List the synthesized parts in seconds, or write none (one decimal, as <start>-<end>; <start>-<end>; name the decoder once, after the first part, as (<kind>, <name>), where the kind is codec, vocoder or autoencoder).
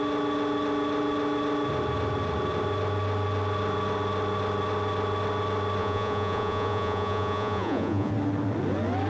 5.8-8.1 (vocoder, Vocos)